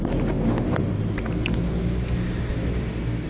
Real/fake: real